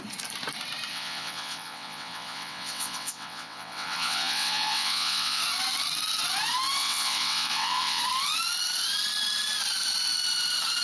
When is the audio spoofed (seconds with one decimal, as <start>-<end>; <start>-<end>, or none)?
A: 0.9-5.4; 6.8-8.0